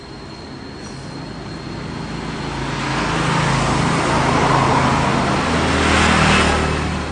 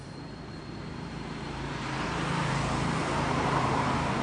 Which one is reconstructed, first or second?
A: second